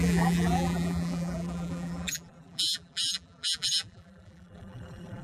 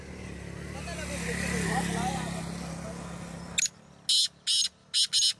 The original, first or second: second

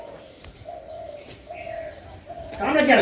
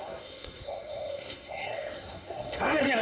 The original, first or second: first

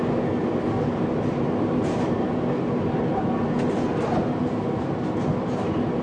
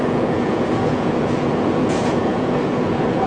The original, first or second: first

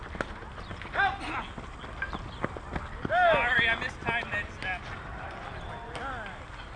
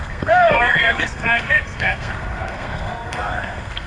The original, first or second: first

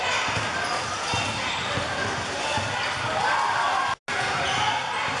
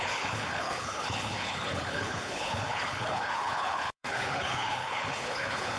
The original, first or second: first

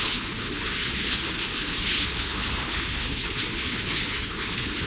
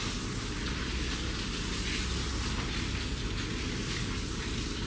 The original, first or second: second